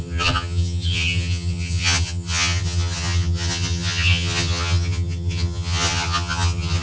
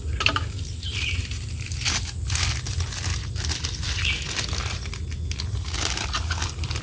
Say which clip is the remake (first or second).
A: first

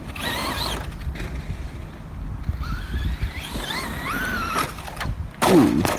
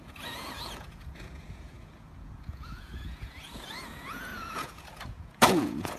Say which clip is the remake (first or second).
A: second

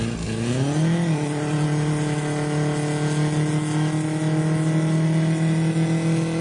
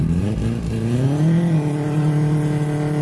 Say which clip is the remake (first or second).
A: second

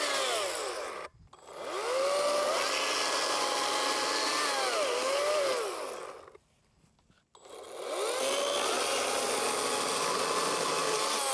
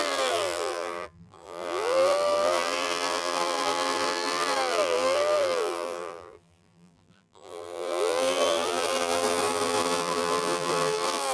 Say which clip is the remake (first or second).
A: second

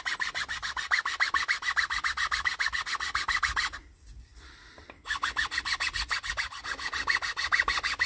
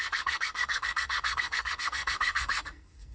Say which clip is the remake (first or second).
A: second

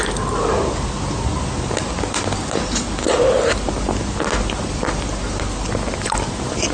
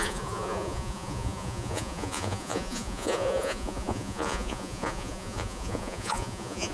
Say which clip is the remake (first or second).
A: second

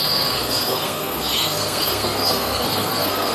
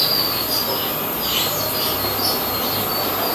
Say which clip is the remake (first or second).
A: first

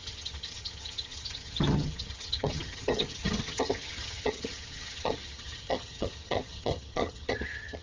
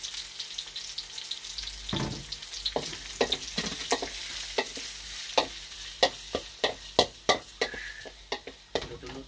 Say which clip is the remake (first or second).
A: first